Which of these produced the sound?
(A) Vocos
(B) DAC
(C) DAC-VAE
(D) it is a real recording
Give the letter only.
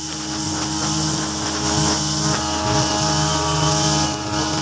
D